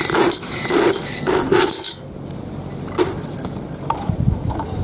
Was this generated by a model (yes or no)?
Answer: no